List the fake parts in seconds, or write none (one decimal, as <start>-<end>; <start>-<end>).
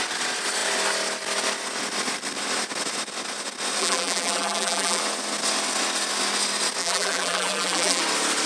3.8-5.0; 6.8-8.0